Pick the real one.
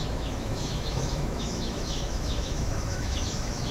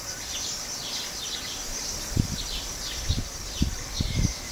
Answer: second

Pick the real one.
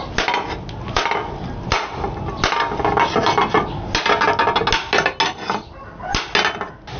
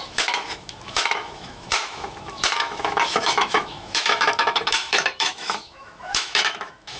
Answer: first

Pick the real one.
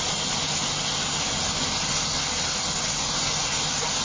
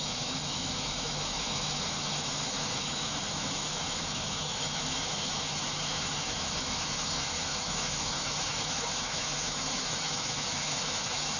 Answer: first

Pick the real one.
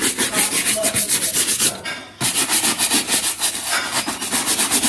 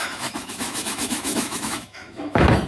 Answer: first